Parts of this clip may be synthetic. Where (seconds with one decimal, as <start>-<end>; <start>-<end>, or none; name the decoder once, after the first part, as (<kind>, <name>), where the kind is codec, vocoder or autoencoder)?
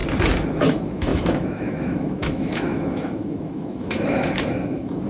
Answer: 0.6-5.1 (autoencoder, DAC-VAE)